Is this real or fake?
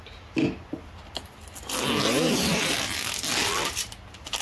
real